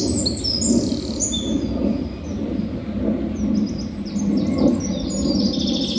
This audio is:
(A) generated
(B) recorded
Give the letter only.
B